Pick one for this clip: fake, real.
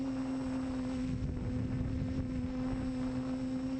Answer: real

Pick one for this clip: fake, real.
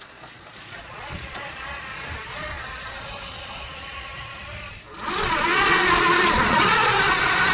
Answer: fake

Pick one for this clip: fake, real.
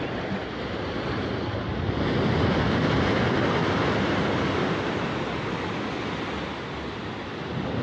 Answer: real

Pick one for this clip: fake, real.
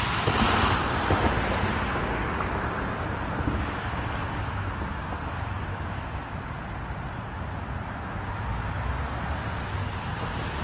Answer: real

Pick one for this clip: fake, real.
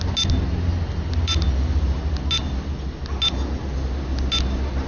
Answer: real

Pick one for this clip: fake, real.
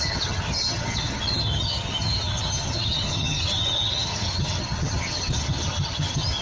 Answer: fake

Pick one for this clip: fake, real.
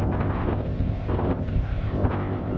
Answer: fake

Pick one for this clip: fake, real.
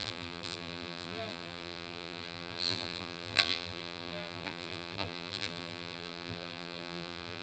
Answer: fake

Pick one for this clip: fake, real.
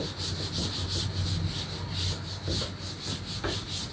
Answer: real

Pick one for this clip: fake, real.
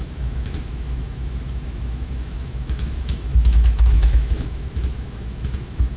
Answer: fake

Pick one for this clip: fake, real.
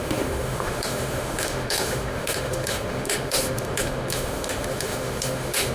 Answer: fake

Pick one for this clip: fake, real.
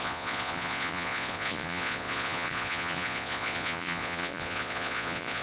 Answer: fake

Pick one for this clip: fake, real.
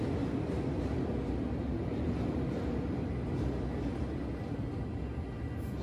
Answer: real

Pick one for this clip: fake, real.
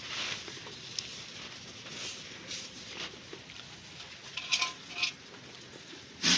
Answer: real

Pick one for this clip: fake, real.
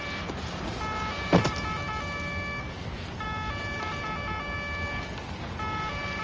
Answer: real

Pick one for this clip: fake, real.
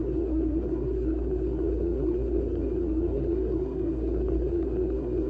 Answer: fake